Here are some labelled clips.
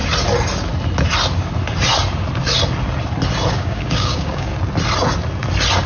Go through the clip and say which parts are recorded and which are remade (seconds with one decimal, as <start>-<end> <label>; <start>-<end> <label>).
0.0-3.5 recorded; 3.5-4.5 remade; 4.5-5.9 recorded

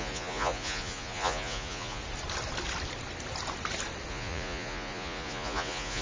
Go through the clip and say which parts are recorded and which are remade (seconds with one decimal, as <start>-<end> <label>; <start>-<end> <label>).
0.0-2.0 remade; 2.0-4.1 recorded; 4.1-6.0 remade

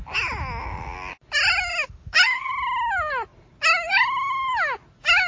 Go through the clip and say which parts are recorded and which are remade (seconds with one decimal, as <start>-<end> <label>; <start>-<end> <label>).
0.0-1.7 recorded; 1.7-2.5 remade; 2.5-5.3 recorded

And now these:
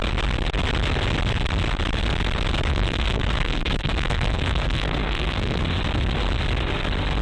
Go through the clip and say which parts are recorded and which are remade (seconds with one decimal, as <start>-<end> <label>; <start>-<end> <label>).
0.0-2.7 recorded; 2.7-5.6 remade; 5.6-7.2 recorded